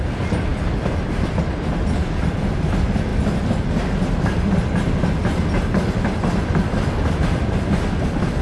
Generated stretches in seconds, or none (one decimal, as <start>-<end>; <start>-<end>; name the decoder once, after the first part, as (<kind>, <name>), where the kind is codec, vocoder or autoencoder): none